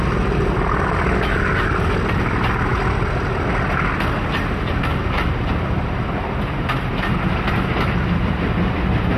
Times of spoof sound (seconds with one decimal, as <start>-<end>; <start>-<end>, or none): none